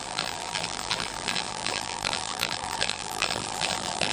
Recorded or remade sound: remade